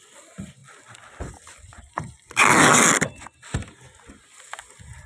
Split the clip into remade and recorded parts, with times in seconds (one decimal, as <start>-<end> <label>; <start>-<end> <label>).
0.0-5.1 recorded